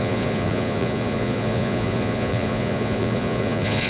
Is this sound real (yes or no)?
no